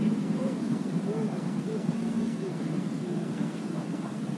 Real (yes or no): no